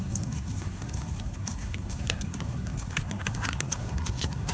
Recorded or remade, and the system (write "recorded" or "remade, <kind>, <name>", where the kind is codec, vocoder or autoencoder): remade, codec, SNAC